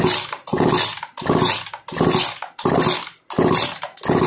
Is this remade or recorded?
recorded